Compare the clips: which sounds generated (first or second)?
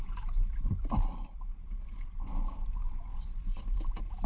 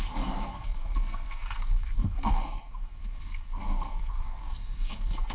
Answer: second